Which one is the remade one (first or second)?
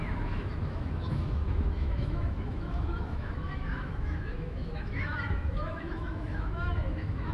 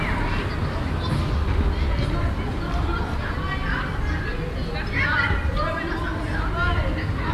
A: first